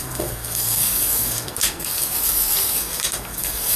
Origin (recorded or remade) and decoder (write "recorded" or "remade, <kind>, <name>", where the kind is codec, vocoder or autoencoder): remade, codec, SNAC